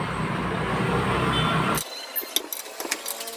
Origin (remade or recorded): recorded